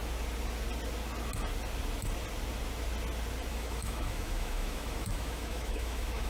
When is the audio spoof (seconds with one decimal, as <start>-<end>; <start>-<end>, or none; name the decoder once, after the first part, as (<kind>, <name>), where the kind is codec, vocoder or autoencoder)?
3.5-6.3 (autoencoder, DAC-VAE)